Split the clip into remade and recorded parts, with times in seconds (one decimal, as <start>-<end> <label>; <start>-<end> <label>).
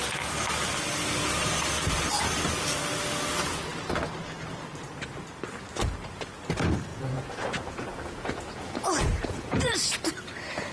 0.0-6.9 recorded; 6.9-10.0 remade; 10.0-10.7 recorded